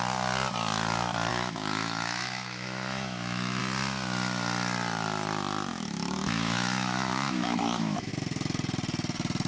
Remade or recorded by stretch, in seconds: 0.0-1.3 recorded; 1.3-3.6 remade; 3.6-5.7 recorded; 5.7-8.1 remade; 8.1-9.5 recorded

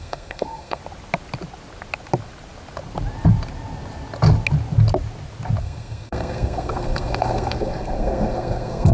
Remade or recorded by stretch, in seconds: 0.0-0.8 remade; 0.8-5.6 recorded; 5.6-8.9 remade

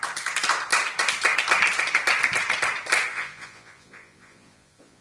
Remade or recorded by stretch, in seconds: 0.0-3.1 recorded; 3.1-5.0 remade

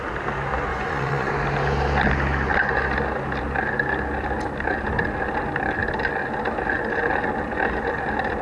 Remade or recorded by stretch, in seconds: 0.0-0.7 recorded; 0.7-1.3 remade; 1.3-8.4 recorded

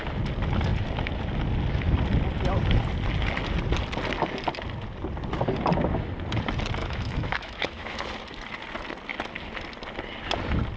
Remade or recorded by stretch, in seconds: 0.0-6.8 recorded; 6.8-8.0 remade; 8.0-10.8 recorded